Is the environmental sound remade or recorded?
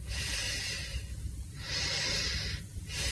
recorded